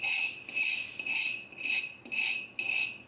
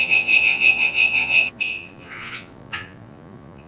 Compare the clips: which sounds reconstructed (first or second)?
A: second